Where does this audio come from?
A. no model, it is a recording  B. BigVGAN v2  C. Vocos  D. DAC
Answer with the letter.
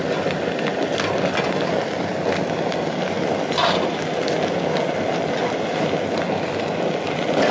A